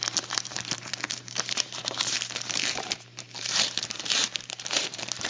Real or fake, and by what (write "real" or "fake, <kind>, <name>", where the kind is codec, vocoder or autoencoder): fake, vocoder, BigVGAN v2